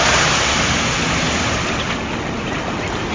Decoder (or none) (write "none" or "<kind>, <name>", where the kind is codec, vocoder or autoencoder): none